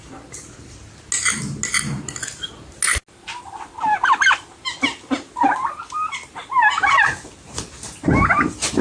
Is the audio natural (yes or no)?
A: yes